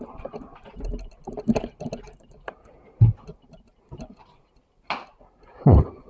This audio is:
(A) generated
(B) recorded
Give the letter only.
B